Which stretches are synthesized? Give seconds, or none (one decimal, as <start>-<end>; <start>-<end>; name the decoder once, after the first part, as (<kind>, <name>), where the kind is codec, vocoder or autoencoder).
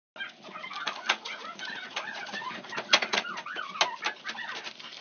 0.7-3.7 (vocoder, Vocos)